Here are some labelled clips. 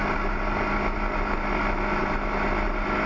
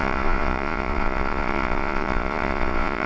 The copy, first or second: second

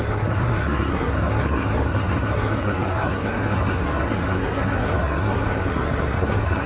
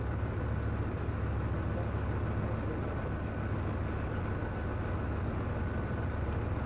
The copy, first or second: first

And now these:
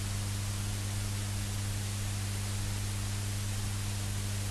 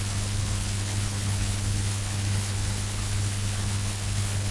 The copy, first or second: second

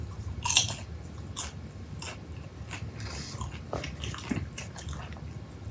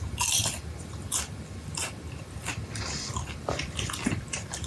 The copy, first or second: second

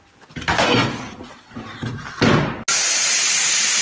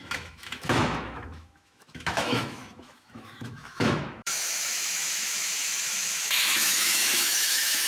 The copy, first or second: second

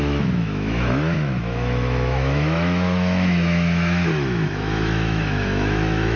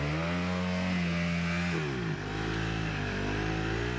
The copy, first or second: first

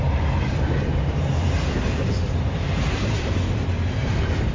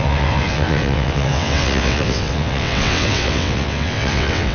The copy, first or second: second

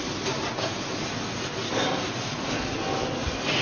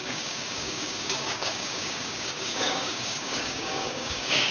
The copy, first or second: second